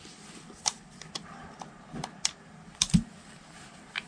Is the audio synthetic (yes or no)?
yes